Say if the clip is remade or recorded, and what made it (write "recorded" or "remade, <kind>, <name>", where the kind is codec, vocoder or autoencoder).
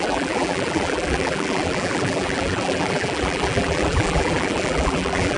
remade, vocoder, BigVGAN v2